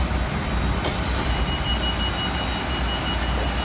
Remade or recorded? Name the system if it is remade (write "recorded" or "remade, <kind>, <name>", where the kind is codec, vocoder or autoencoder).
recorded